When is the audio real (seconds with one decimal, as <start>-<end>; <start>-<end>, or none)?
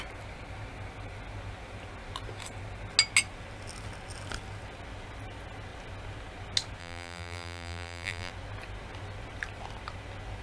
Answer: 0.0-6.8; 8.3-10.4